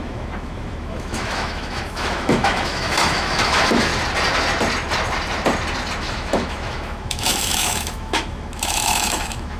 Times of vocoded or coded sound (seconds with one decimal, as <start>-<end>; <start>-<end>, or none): 0.0-3.9; 6.0-9.6